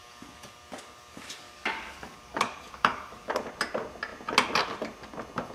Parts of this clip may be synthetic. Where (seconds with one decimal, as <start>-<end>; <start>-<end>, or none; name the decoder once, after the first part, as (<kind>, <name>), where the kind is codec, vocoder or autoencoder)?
0.0-3.3 (codec, DAC)